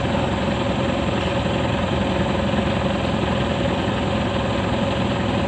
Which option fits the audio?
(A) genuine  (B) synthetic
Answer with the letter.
A